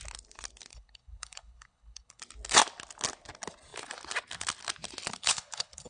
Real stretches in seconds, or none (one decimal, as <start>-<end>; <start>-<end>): 0.0-0.7; 2.2-5.2